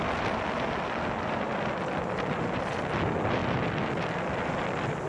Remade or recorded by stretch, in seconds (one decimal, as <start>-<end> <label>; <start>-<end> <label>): 0.0-5.1 recorded